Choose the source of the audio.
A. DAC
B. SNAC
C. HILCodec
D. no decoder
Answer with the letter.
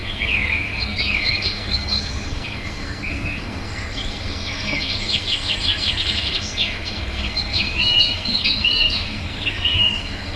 B